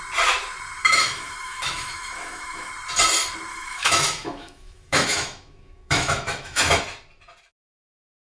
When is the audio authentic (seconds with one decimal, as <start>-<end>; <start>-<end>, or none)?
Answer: 0.0-0.8; 2.7-3.5; 6.8-8.4